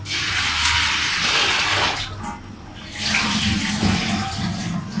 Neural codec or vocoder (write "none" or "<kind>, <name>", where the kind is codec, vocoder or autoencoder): none